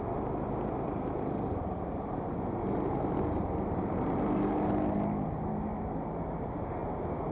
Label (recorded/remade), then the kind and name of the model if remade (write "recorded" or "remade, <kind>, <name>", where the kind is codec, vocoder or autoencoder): recorded